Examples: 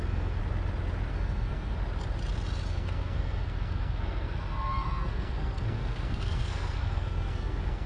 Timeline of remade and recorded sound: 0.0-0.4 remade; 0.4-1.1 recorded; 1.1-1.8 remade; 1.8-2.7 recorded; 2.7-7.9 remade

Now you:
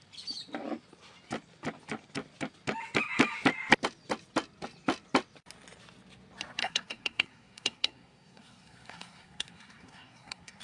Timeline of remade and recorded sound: 0.0-6.6 recorded; 6.6-10.6 remade

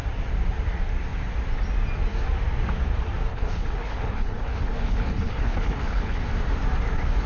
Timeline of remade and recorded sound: 0.0-3.3 recorded; 3.3-6.2 remade; 6.2-7.3 recorded

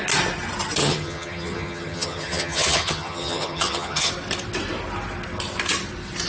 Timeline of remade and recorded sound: 0.0-0.8 recorded; 0.8-4.1 remade; 4.1-6.3 recorded